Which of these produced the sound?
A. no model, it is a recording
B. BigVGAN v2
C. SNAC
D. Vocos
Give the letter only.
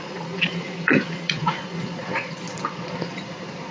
D